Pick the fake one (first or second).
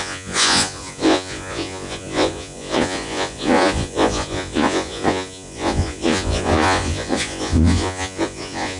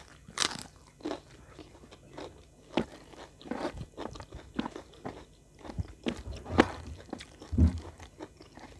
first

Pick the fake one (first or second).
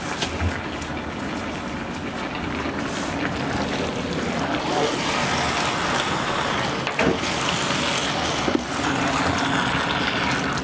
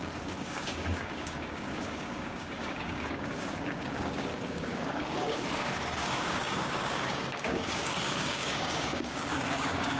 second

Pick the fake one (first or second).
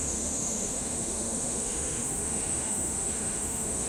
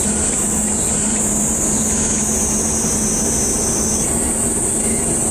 first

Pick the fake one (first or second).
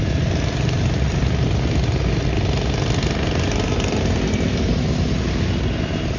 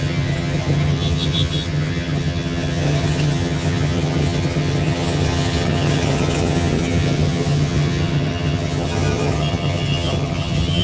second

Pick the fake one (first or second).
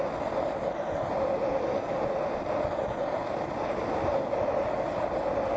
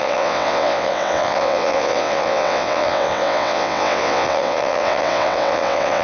second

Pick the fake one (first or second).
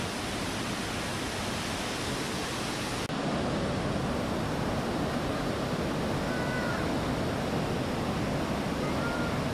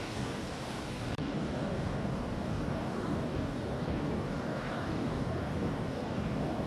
second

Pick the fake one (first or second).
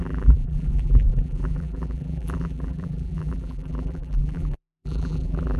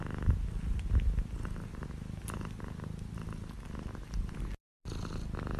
first